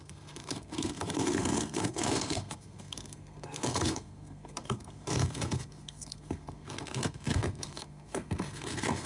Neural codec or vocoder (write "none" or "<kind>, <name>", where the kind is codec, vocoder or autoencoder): codec, SNAC